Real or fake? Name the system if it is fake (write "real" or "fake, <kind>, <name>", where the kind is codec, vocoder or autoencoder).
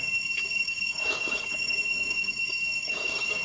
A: fake, codec, DAC